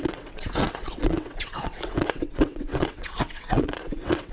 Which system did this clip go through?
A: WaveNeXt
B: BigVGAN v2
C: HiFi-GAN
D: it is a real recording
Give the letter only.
A